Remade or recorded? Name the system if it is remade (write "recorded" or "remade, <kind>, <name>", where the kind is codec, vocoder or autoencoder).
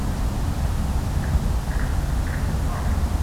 recorded